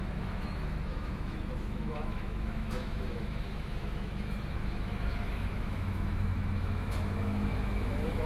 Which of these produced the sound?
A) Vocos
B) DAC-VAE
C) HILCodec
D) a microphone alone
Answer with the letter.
B